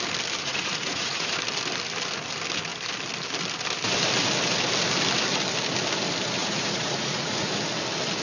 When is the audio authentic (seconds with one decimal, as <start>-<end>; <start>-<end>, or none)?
0.0-0.4; 1.3-6.4; 7.5-8.2